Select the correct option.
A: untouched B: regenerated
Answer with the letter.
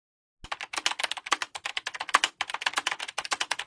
A